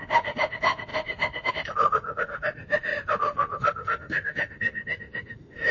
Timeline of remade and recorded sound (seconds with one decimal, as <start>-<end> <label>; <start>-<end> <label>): 0.0-5.7 remade